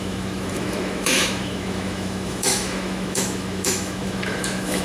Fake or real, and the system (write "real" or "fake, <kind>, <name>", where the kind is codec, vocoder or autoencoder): fake, autoencoder, DAC-VAE